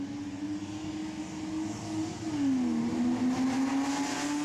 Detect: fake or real real